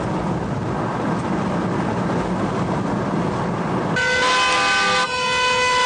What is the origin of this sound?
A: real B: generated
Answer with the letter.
A